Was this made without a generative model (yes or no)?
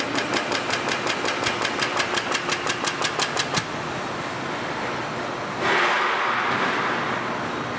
yes